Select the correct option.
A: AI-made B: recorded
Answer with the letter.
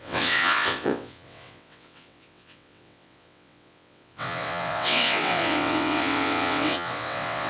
A